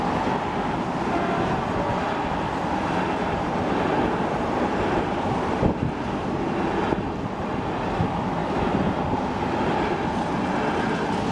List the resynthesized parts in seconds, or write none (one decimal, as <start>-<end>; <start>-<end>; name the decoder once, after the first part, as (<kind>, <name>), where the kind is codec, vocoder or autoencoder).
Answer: none